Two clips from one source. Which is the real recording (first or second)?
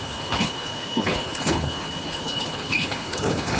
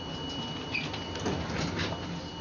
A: second